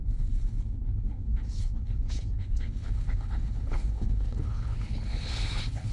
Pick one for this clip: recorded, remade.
remade